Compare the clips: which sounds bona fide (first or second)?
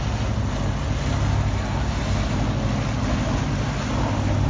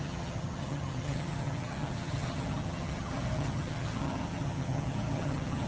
first